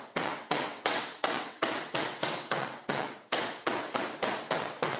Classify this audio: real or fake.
fake